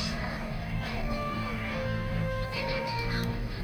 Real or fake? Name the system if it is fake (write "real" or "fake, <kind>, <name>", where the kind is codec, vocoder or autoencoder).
fake, codec, DAC